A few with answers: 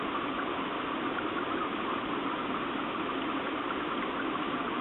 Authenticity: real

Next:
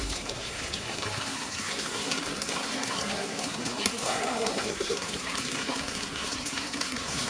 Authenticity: fake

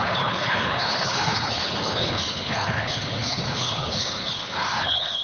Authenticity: fake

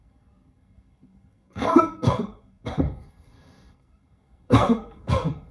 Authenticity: fake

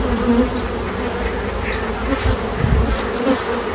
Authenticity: real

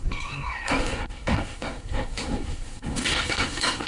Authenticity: fake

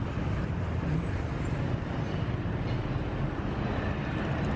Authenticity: real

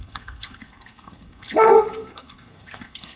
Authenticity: fake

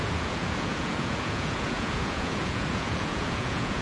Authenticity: fake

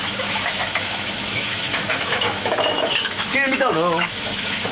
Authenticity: fake